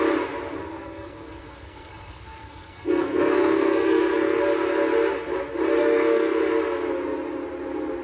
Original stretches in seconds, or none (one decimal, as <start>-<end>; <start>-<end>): 0.0-0.6; 4.4-5.8; 6.4-8.0

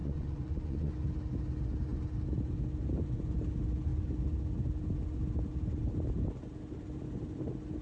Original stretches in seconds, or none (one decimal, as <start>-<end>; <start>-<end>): 0.9-7.8

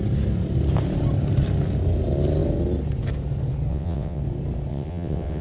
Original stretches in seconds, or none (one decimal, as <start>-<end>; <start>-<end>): 0.0-3.7; 4.2-4.7

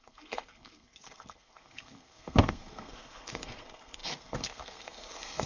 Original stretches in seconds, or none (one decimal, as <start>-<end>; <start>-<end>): none

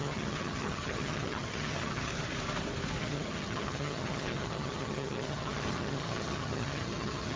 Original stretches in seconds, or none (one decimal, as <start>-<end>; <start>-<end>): 2.1-3.0

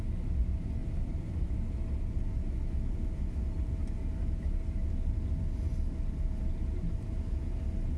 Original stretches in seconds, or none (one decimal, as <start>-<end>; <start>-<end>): 0.0-0.8; 1.8-6.5; 7.2-8.0

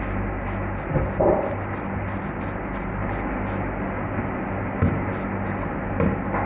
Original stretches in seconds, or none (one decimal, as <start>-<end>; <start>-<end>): 0.0-6.5

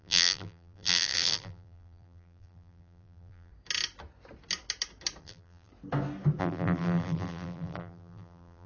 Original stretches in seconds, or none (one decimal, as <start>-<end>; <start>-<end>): 3.5-5.2; 5.7-6.4